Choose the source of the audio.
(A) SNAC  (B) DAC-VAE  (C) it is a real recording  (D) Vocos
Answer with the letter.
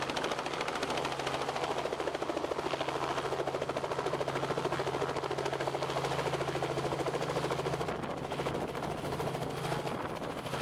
C